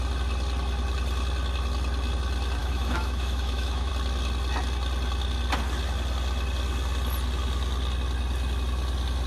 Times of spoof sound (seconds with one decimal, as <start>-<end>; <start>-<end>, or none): 2.6-3.9